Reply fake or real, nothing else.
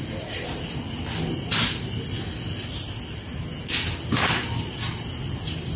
real